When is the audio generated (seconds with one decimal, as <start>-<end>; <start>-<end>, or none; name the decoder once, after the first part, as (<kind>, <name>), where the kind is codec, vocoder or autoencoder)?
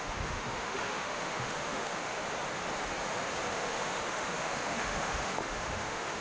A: 0.0-2.2 (autoencoder, DAC-VAE); 3.5-6.2